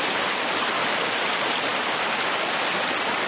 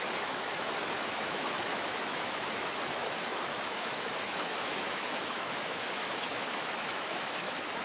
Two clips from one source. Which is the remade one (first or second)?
second